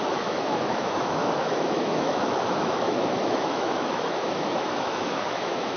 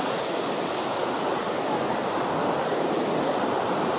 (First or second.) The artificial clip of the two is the first